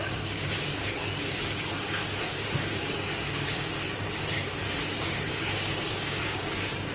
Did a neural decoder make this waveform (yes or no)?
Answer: yes